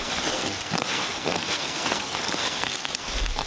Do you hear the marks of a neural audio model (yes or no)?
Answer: yes